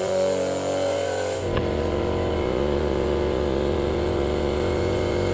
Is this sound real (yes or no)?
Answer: no